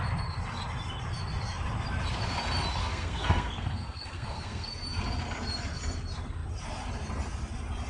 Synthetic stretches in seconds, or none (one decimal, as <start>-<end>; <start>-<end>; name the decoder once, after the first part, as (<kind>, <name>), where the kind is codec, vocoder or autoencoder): 2.8-4.7 (codec, SNAC)